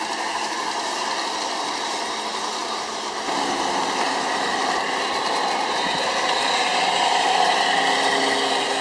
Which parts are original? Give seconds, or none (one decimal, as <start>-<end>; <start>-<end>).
0.0-8.8